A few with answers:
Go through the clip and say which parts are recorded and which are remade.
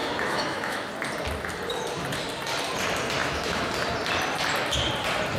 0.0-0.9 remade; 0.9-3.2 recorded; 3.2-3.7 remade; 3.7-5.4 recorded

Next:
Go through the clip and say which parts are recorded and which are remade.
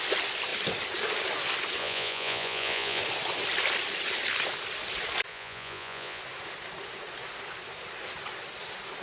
0.0-1.8 recorded; 1.8-3.0 remade; 3.0-5.3 recorded; 5.3-6.2 remade; 6.2-9.0 recorded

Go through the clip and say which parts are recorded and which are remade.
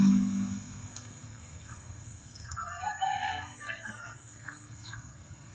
0.0-5.5 remade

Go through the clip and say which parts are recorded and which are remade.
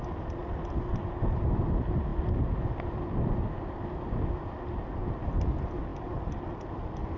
0.0-7.2 recorded